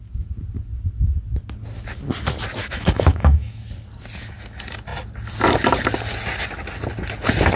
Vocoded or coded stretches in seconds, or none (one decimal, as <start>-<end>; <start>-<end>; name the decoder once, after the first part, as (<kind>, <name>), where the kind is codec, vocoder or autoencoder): 2.6-3.6 (autoencoder, DAC-VAE)